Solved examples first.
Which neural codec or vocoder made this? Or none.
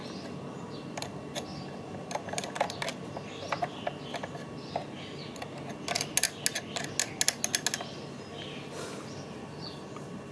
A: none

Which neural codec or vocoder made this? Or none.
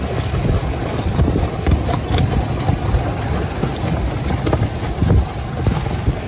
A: none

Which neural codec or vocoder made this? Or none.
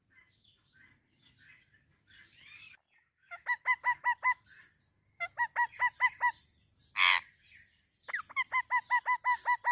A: none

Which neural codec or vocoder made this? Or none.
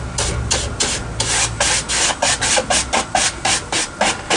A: none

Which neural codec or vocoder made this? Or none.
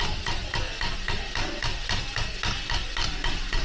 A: none